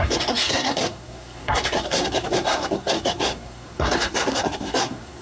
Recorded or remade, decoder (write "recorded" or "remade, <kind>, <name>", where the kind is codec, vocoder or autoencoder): remade, codec, SNAC